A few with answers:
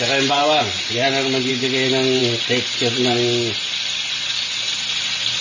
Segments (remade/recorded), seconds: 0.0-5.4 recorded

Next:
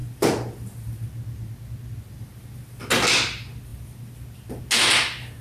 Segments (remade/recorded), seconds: 0.0-5.4 recorded

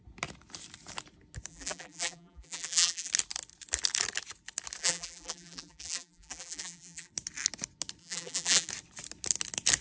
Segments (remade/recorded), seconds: 0.0-1.5 recorded; 1.5-3.1 remade; 3.1-4.8 recorded; 4.8-7.1 remade; 7.1-8.0 recorded; 8.0-8.7 remade; 8.7-9.8 recorded

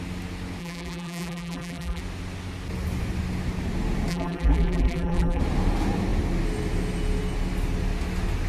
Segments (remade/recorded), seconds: 0.0-0.6 recorded; 0.6-2.0 remade; 2.0-4.1 recorded; 4.1-5.4 remade; 5.4-8.5 recorded

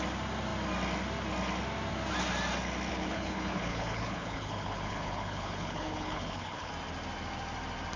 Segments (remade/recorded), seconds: 0.0-2.9 recorded; 2.9-6.7 remade; 6.7-8.0 recorded